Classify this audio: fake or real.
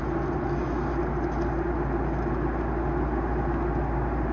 real